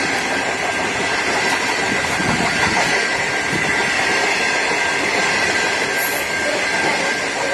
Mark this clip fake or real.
real